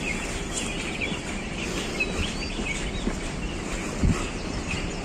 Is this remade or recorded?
recorded